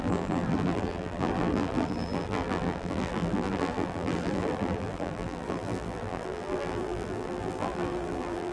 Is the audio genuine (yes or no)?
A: no